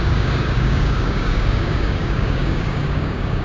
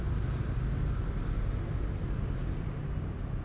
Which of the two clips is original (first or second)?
second